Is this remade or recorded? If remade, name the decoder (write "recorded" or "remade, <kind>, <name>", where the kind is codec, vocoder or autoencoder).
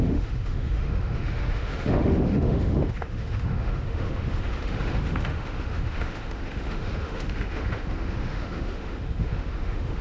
remade, autoencoder, DAC-VAE